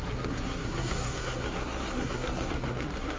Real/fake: fake